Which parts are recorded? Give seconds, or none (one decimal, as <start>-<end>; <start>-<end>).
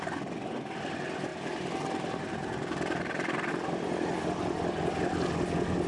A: 0.0-1.3; 3.5-5.9